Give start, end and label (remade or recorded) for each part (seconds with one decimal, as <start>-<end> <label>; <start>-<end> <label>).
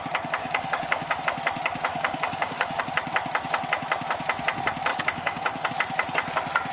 0.0-0.4 recorded; 0.4-1.2 remade; 1.2-1.9 recorded; 1.9-2.8 remade; 2.8-4.9 recorded; 4.9-5.7 remade; 5.7-6.7 recorded